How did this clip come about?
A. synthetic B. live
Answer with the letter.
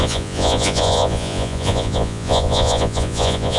A